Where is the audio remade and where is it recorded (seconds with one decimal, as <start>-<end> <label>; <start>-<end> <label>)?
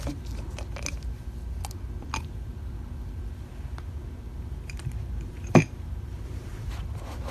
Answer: 0.0-4.3 recorded; 4.3-6.7 remade; 6.7-7.3 recorded